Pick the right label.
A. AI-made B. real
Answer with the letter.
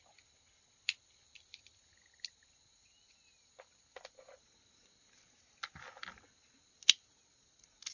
B